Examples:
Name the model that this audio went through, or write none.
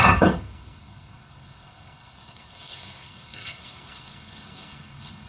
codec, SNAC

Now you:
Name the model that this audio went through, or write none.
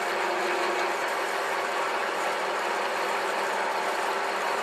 vocoder, BigVGAN v2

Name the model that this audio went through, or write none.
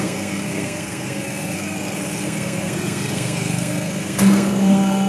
codec, SNAC